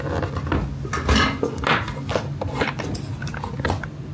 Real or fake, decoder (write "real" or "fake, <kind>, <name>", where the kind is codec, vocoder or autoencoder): real